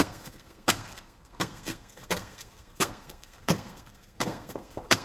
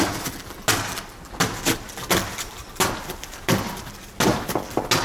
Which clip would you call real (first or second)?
second